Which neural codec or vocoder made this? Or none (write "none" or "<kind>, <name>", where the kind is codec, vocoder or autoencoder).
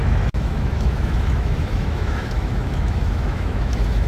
autoencoder, DAC-VAE